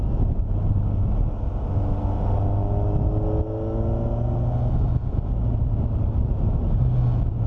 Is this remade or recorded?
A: recorded